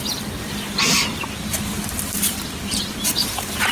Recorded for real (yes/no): no